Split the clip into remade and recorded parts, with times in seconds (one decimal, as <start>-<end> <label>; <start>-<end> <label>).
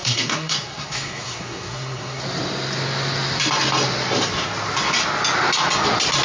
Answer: 0.0-2.2 remade; 2.2-6.2 recorded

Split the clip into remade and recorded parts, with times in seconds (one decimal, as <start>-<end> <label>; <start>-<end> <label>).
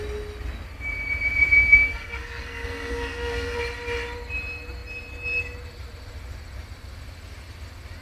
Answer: 0.0-1.9 recorded; 1.9-3.6 remade; 3.6-8.0 recorded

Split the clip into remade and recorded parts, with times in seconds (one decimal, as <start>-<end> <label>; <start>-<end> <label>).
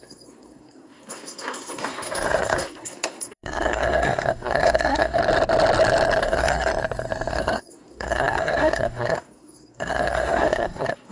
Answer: 0.0-5.2 remade; 5.2-6.2 recorded; 6.2-6.7 remade; 6.7-7.3 recorded; 7.3-11.1 remade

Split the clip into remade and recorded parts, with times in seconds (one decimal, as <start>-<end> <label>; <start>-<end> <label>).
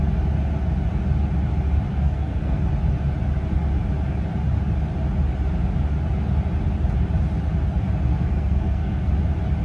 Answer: 0.0-1.9 recorded; 1.9-2.6 remade; 2.6-8.1 recorded; 8.1-9.1 remade; 9.1-9.6 recorded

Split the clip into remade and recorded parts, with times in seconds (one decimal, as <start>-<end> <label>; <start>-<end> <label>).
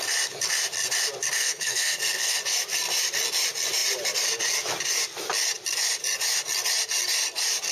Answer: 0.0-1.4 recorded; 1.4-2.4 remade; 2.4-7.7 recorded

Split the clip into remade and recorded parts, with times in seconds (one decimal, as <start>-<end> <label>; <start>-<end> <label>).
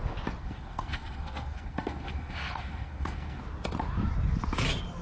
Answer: 0.0-0.4 recorded; 0.4-3.4 remade; 3.4-5.0 recorded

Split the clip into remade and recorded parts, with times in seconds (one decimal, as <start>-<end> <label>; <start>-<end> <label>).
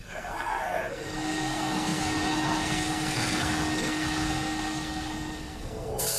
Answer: 0.0-6.2 remade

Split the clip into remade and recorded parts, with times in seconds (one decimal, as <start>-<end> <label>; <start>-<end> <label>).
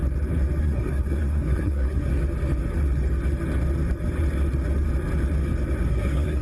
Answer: 0.0-0.6 recorded; 0.6-2.1 remade; 2.1-5.9 recorded; 5.9-6.4 remade